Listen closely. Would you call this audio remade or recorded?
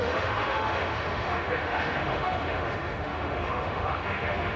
remade